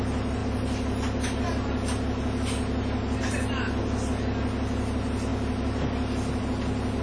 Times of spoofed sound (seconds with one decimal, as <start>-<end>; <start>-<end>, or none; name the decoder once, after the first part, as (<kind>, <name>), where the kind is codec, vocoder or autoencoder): none

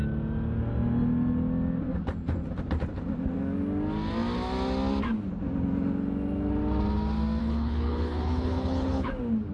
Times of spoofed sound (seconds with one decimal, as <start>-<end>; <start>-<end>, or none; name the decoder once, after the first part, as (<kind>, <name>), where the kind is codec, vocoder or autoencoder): 7.4-9.1 (codec, HILCodec)

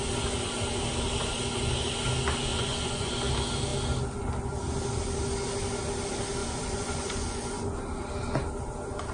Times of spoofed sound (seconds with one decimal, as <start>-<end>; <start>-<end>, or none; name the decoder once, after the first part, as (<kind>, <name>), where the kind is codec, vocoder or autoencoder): 2.5-3.1 (vocoder, Vocos); 6.4-7.8

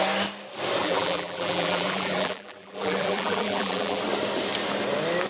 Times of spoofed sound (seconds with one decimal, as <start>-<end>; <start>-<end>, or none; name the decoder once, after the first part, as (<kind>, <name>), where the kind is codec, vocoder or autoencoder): 0.8-4.0 (vocoder, BigVGAN v2)

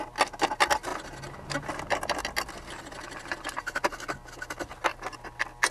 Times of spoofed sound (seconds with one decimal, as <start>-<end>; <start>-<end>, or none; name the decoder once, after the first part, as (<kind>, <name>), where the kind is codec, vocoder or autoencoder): none

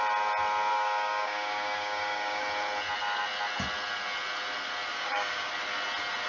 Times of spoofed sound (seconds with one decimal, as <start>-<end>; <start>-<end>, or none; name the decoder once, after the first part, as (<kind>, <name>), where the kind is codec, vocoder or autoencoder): 0.7-2.4 (codec, DAC); 4.9-5.5

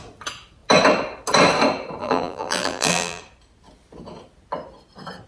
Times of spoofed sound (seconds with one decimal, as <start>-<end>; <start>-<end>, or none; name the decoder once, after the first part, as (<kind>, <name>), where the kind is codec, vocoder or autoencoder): 2.0-3.2 (vocoder, BigVGAN v2)